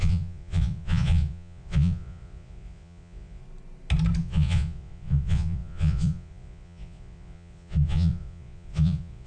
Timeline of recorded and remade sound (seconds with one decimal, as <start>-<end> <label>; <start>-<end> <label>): 0.0-3.4 remade; 3.4-4.2 recorded; 4.2-9.3 remade

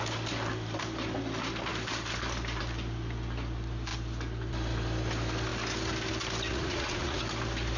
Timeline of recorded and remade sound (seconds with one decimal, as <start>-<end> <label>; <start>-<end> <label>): 0.0-6.5 recorded; 6.5-7.2 remade; 7.2-7.8 recorded

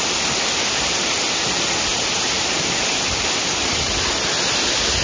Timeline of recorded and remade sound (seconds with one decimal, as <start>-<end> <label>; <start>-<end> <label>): 0.0-5.0 recorded

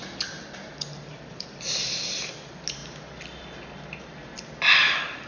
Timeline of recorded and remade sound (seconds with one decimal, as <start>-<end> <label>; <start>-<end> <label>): 0.0-5.3 recorded

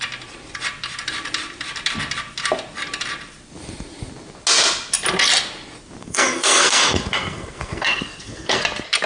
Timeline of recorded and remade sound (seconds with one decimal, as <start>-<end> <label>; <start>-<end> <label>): 0.0-6.0 recorded; 6.0-8.6 remade; 8.6-9.1 recorded

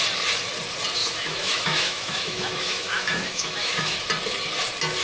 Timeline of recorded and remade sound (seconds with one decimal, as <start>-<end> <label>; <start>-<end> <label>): 0.0-1.0 recorded; 1.0-4.0 remade; 4.0-5.0 recorded